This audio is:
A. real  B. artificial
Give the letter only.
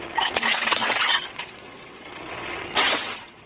B